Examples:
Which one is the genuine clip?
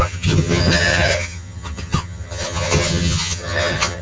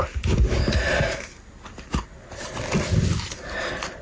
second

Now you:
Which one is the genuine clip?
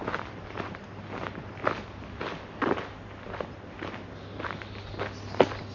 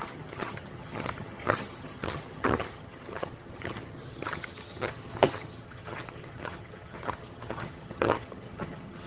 first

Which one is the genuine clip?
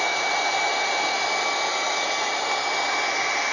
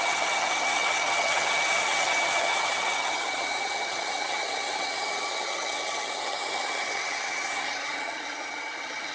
first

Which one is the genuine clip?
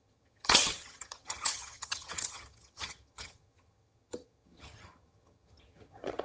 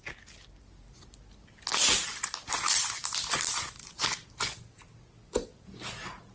second